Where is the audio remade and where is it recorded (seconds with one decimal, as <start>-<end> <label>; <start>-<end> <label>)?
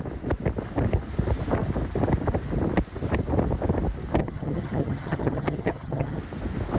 0.0-4.2 recorded; 4.2-6.2 remade; 6.2-6.8 recorded